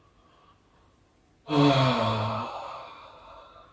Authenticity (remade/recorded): recorded